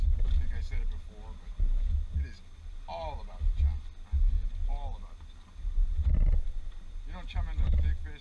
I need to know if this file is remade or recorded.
recorded